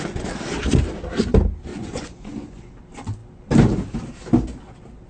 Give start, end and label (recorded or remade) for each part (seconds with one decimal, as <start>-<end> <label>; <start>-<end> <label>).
0.0-1.7 recorded; 1.7-2.7 remade; 2.7-5.1 recorded